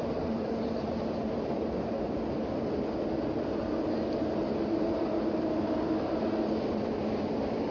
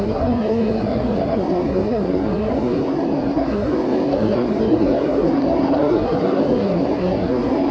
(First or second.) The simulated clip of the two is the second